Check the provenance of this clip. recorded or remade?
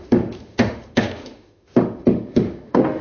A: remade